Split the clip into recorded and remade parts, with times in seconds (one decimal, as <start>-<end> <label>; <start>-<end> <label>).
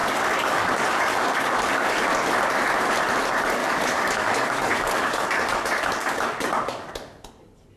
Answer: 0.0-1.9 remade; 1.9-3.6 recorded; 3.6-6.9 remade; 6.9-7.8 recorded